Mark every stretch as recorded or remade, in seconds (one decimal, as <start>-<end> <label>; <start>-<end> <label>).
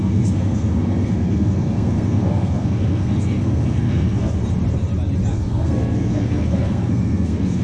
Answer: 0.0-4.4 remade; 4.4-5.3 recorded; 5.3-7.6 remade